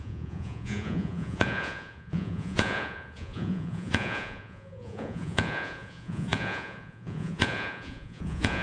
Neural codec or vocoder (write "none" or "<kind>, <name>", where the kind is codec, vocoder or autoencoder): vocoder, Vocos